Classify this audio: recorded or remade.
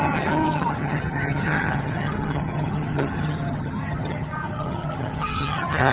remade